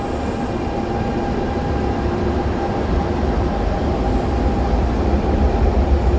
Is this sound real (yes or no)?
yes